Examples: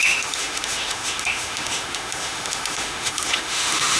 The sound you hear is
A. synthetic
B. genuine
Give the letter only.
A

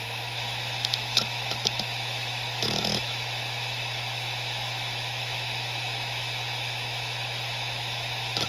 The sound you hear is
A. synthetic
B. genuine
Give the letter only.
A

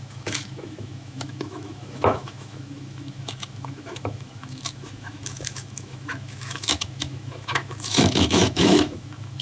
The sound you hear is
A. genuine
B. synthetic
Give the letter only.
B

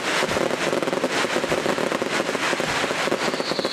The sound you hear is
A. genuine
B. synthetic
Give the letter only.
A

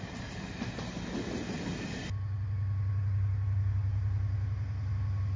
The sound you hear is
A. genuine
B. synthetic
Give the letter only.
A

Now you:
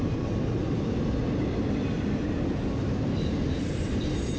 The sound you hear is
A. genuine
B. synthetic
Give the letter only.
A